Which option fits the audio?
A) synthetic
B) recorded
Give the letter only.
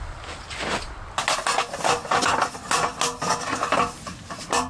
B